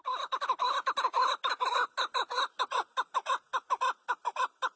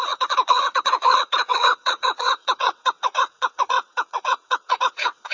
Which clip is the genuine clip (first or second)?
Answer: first